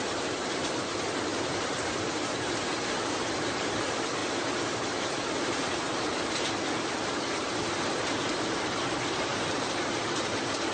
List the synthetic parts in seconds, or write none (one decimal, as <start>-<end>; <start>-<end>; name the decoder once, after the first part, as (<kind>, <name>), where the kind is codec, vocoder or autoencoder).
0.0-10.7 (vocoder, BigVGAN v2)